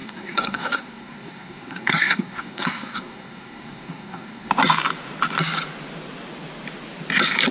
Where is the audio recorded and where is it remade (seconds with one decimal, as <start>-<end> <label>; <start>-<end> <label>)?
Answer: 0.0-4.5 remade; 4.5-7.5 recorded